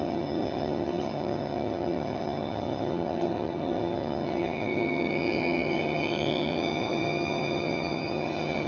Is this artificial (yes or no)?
yes